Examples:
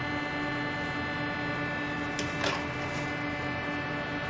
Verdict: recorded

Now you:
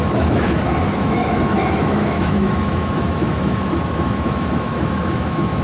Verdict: remade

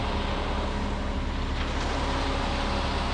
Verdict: recorded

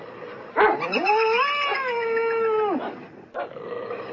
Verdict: recorded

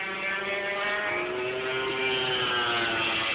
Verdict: recorded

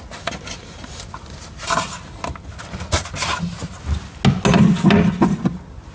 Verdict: recorded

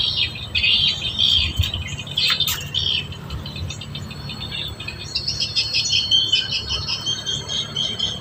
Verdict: recorded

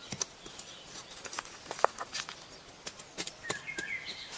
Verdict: recorded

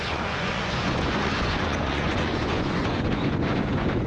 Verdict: remade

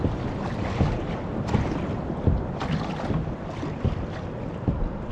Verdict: recorded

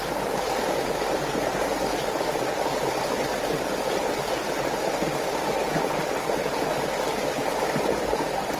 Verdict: remade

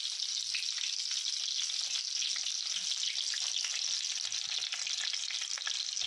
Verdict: recorded